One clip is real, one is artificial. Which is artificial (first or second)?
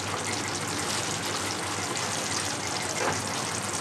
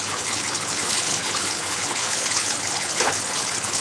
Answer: second